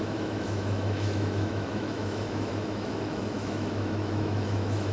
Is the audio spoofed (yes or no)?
yes